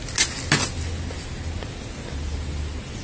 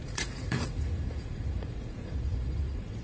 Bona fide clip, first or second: first